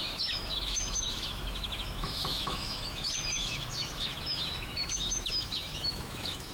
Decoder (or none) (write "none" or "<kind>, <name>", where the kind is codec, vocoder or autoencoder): autoencoder, DAC-VAE